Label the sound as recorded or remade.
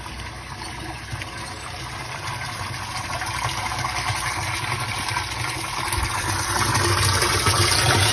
recorded